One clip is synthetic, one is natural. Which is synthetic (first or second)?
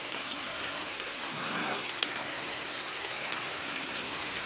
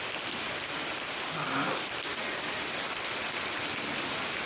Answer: first